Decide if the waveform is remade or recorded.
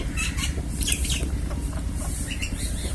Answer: remade